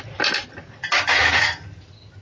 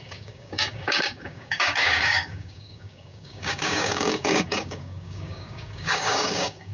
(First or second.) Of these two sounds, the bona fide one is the first